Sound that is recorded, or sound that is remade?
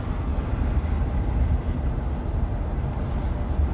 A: recorded